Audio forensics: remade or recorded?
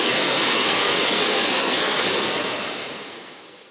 remade